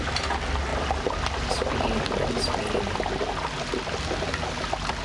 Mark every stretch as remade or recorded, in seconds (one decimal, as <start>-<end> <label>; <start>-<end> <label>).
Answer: 0.0-5.0 recorded